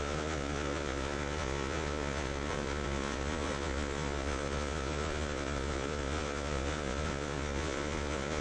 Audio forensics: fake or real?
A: fake